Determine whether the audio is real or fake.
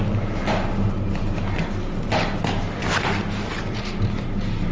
real